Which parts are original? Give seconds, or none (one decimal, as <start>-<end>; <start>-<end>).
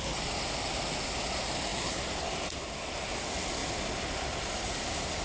0.0-5.2